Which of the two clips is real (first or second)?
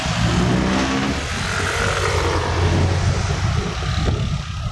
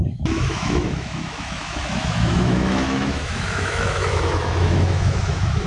first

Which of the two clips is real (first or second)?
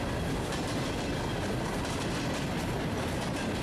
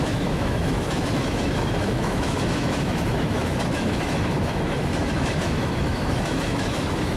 first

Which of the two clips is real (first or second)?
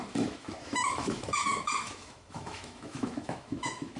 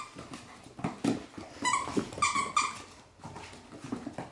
second